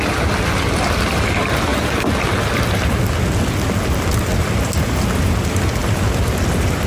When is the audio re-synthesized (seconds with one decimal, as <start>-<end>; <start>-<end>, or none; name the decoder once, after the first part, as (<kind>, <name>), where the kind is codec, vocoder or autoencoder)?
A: none